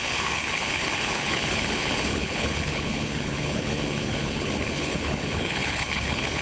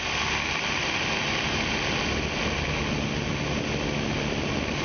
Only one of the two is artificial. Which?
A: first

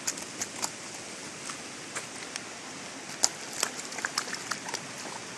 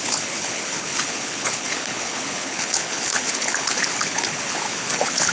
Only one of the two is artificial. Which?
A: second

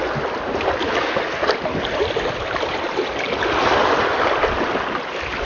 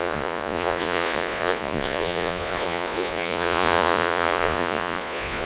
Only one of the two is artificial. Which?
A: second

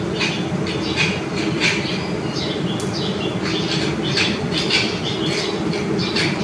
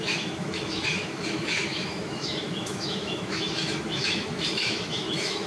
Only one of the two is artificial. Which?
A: second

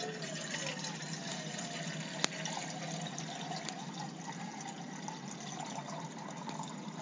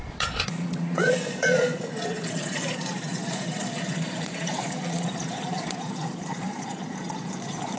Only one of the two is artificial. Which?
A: second